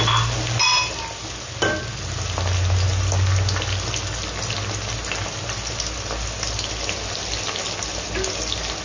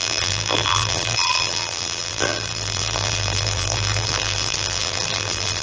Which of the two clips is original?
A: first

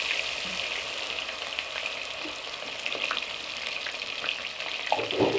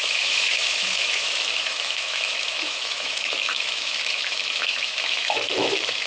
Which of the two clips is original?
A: first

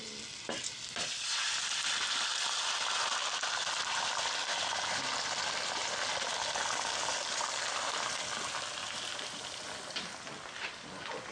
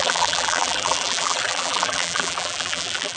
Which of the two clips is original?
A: first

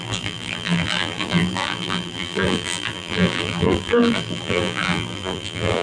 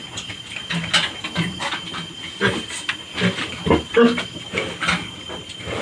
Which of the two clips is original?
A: second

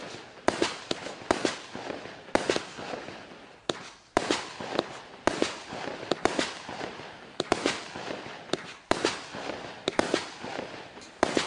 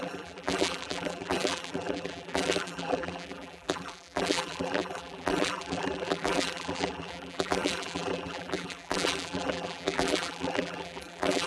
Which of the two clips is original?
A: first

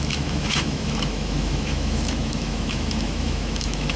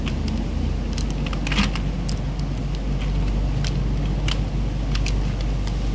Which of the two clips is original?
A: second